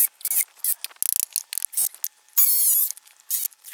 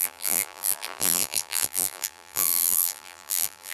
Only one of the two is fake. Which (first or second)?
second